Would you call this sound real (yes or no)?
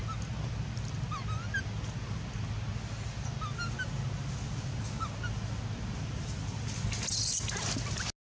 yes